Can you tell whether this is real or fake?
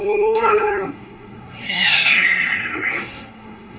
fake